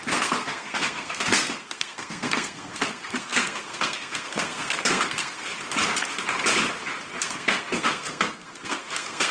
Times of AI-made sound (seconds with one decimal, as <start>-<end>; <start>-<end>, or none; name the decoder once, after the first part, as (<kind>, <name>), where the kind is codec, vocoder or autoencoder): 0.0-5.5 (codec, SNAC); 7.2-9.3